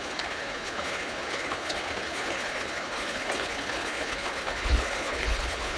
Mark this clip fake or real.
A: fake